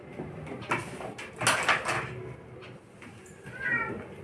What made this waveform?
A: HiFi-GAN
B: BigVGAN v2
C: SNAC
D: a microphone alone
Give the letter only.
D